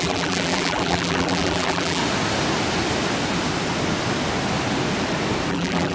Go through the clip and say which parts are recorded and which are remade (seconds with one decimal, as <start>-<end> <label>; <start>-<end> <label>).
0.0-2.0 remade; 2.0-5.5 recorded; 5.5-5.9 remade